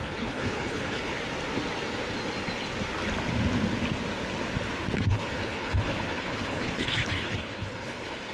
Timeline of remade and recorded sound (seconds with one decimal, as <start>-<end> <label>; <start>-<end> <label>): 0.0-1.1 remade; 1.1-5.1 recorded; 5.1-8.3 remade